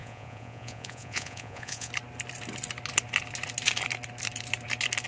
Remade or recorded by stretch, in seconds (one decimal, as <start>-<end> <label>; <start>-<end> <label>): 0.0-1.9 remade; 1.9-5.1 recorded